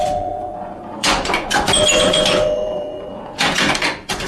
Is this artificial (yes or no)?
yes